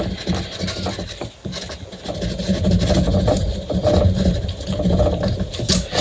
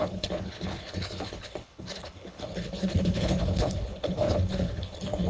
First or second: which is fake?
second